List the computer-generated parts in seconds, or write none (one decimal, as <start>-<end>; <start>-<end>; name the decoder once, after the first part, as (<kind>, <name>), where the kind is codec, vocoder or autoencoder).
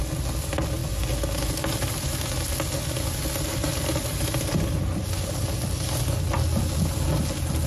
none